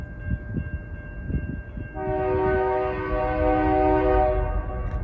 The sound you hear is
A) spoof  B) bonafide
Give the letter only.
B